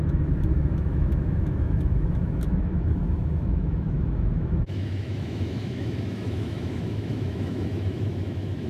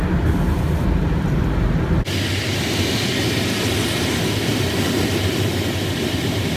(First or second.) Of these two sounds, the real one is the second